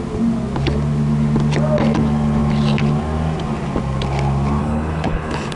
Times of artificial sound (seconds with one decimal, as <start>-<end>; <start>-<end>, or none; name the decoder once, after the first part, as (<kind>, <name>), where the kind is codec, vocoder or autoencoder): 4.6-5.6 (codec, HILCodec)